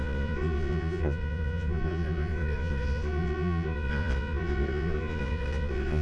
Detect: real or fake fake